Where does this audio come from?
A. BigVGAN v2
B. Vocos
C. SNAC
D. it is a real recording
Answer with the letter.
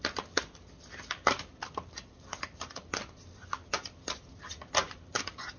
D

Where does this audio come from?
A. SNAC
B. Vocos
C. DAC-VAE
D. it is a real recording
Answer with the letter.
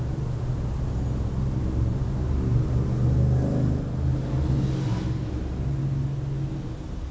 D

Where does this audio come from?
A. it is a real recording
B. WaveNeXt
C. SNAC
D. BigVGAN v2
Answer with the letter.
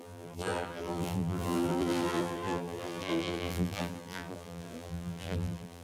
D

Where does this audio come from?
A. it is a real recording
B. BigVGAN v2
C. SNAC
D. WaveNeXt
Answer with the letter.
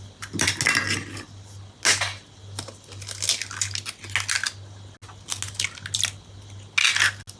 A